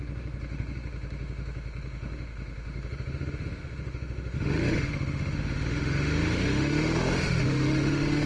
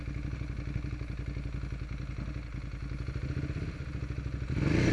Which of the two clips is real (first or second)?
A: second